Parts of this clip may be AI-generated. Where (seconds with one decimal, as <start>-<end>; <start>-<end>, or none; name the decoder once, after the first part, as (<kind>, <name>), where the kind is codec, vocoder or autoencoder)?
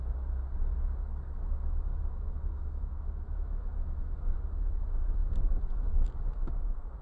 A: 1.9-4.0 (autoencoder, DAC-VAE)